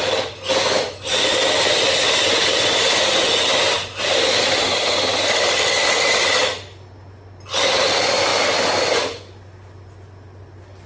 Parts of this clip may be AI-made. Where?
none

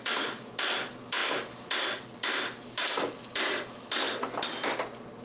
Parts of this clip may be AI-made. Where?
none